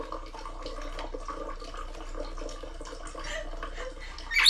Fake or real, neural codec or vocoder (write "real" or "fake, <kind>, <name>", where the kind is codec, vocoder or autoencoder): real